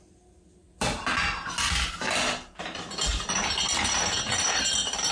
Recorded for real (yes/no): yes